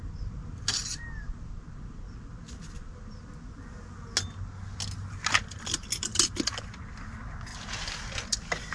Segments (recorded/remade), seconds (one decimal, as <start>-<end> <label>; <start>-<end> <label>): 0.0-8.7 recorded

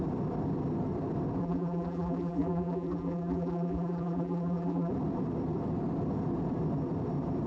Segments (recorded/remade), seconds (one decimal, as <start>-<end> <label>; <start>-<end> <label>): 0.0-1.4 recorded; 1.4-4.9 remade; 4.9-7.5 recorded

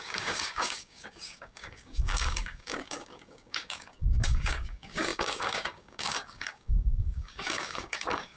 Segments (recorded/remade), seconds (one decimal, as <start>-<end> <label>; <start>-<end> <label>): 0.0-8.4 remade

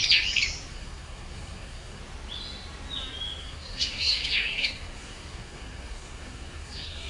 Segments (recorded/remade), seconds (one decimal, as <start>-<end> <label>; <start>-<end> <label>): 0.0-0.7 recorded; 0.7-2.0 remade; 2.0-3.4 recorded; 3.4-7.1 remade